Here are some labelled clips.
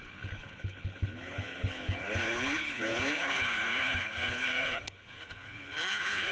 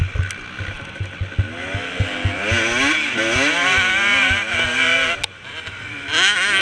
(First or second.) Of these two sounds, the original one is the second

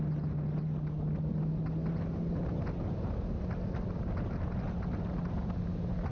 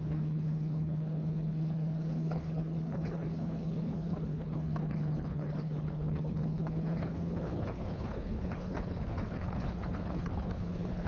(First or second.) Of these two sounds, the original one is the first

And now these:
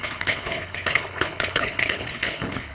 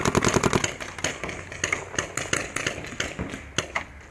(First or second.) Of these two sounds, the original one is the second